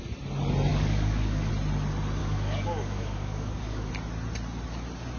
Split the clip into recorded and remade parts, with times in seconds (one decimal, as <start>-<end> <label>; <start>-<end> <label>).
0.0-0.7 recorded; 0.7-1.5 remade; 1.5-2.2 recorded; 2.2-3.9 remade; 3.9-5.2 recorded